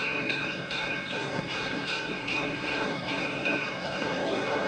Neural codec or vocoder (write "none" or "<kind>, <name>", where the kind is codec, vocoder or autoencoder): codec, SNAC